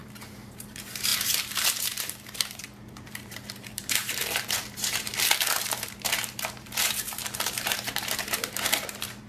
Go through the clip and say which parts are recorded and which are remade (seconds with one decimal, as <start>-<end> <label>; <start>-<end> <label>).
0.0-5.1 remade; 5.1-5.6 recorded; 5.6-9.3 remade